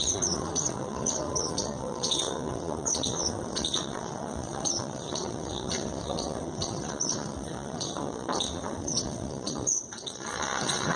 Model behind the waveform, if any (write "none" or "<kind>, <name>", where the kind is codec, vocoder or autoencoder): vocoder, WaveNeXt